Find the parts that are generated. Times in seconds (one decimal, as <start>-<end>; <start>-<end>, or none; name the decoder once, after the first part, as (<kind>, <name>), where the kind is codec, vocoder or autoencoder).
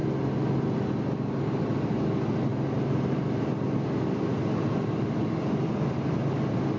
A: none